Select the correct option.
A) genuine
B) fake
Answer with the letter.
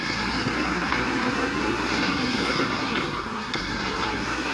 B